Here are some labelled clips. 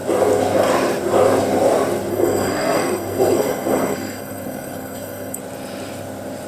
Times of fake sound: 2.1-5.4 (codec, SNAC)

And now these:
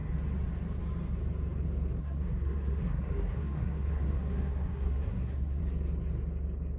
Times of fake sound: 2.0-5.6 (codec, SNAC)

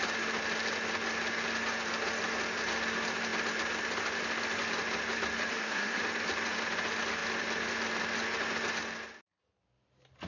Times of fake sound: 5.5-6.0 (codec, SNAC)

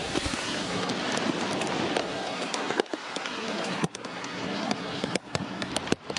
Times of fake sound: 0.0-0.9 (codec, SNAC); 2.0-5.7

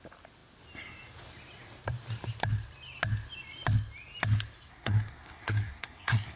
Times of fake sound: 4.7-6.4 (codec, SNAC)